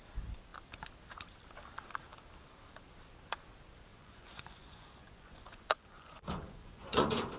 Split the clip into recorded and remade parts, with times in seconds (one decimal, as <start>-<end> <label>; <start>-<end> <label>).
0.0-3.9 recorded; 3.9-7.4 remade